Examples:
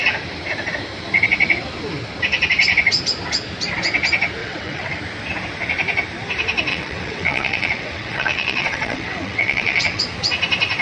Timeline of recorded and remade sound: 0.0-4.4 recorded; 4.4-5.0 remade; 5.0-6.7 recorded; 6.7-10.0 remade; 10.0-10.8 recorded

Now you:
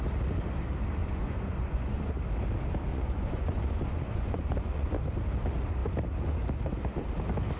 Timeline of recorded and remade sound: 0.0-1.0 recorded; 1.0-2.1 remade; 2.1-2.9 recorded; 2.9-4.9 remade; 4.9-7.6 recorded

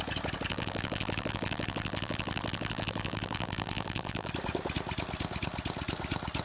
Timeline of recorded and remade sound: 0.0-0.5 recorded; 0.5-4.3 remade; 4.3-6.4 recorded

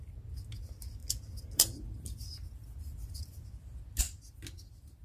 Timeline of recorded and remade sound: 0.0-5.0 recorded

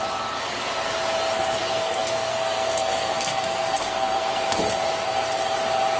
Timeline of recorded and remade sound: 0.0-1.6 recorded; 1.6-4.6 remade; 4.6-6.0 recorded

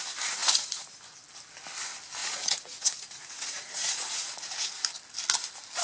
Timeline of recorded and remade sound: 0.0-0.4 recorded; 0.4-0.9 remade; 0.9-2.2 recorded; 2.2-4.7 remade; 4.7-5.8 recorded

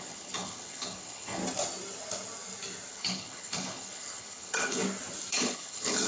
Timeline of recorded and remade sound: 0.0-1.4 remade; 1.4-2.9 recorded; 2.9-4.8 remade; 4.8-5.3 recorded; 5.3-6.1 remade

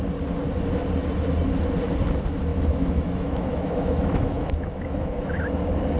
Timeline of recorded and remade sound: 0.0-2.5 recorded; 2.5-5.4 remade; 5.4-6.0 recorded